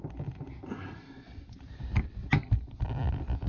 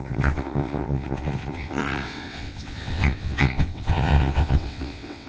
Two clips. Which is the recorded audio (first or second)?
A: first